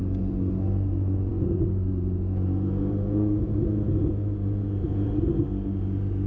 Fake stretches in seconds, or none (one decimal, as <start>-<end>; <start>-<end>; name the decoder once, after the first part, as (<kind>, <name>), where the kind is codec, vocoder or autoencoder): 1.3-5.1 (vocoder, Vocos)